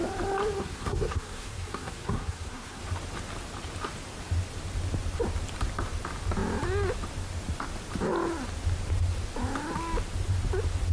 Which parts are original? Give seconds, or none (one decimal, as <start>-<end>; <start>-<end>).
0.0-0.6; 2.8-10.9